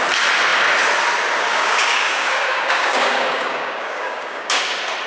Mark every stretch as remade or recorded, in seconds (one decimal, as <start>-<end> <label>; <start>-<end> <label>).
0.0-1.5 recorded; 1.5-4.6 remade; 4.6-5.1 recorded